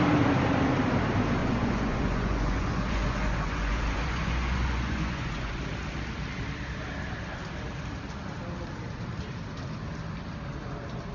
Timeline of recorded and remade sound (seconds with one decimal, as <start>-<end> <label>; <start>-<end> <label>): 0.0-1.4 recorded; 1.4-5.6 remade; 5.6-11.1 recorded